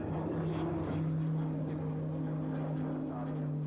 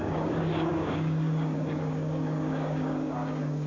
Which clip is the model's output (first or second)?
second